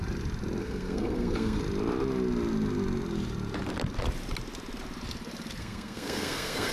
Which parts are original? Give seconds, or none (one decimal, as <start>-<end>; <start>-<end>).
0.0-0.6; 1.6-5.6